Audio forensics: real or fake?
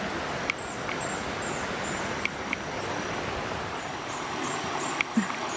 real